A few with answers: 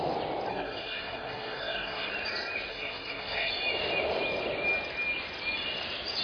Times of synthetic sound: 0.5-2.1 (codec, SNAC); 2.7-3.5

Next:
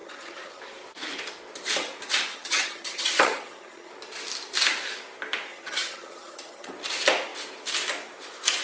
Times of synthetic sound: 0.0-0.6 (vocoder, HiFi-GAN); 2.3-3.9; 5.5-6.7

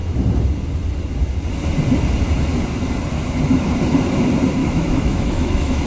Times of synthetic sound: 4.6-5.9 (autoencoder, DAC-VAE)